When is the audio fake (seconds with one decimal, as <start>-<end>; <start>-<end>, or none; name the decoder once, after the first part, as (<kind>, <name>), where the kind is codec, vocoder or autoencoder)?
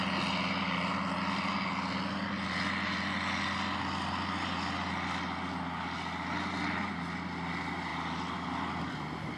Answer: none